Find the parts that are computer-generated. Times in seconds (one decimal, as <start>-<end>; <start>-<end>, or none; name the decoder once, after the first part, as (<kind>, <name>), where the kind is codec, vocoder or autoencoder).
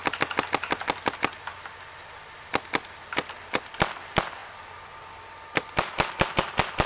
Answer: none